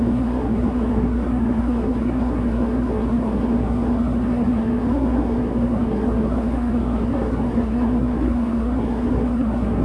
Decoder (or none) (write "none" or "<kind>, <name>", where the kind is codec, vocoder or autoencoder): codec, SNAC